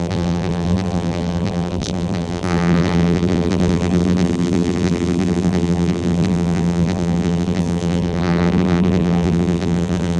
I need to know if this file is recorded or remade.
remade